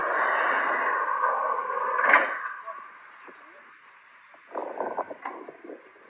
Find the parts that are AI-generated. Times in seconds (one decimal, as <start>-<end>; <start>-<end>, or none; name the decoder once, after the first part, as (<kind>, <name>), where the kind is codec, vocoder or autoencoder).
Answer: none